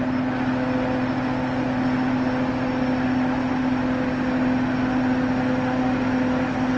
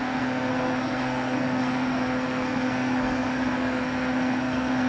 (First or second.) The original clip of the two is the first